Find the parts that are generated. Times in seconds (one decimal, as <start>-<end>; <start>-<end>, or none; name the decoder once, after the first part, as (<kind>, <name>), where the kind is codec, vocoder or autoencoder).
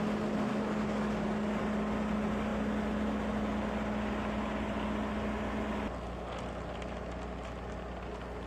0.5-1.6 (codec, DAC)